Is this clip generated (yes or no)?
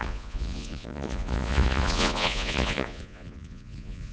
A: yes